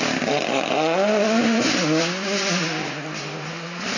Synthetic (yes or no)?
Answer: no